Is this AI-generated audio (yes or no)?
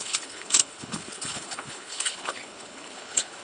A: yes